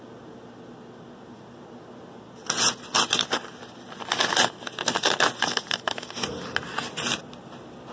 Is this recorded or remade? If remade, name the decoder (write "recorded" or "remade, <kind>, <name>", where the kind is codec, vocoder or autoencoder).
recorded